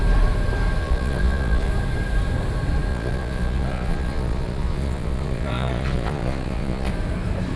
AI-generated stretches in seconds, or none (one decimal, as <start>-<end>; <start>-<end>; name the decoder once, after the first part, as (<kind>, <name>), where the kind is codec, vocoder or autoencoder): 0.8-1.7 (vocoder, Vocos); 2.9-6.9